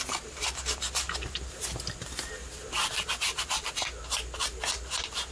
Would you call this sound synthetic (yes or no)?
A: no